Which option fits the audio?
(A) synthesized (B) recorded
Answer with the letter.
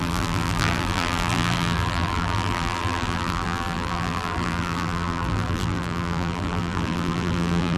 A